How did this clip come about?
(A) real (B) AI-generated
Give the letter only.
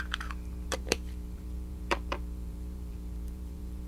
B